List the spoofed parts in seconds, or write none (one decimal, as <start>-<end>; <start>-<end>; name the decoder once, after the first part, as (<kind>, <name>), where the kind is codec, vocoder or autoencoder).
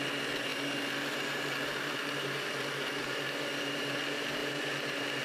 none